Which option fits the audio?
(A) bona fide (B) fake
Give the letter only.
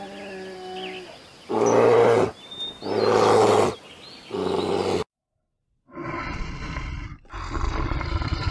A